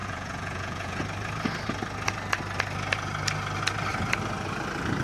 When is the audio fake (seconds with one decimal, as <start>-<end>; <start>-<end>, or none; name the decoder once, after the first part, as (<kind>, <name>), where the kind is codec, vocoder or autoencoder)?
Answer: 0.0-1.0 (vocoder, Vocos)